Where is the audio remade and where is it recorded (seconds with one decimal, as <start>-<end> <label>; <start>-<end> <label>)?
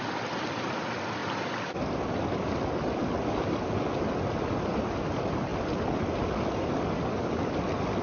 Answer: 0.0-8.0 recorded